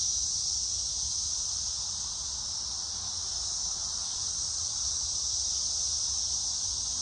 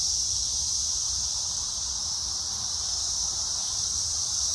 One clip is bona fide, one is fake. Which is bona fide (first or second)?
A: first